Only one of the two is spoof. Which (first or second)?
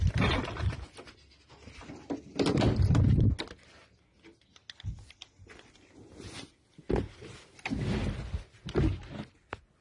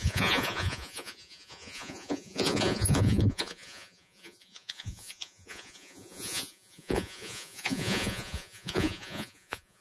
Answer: second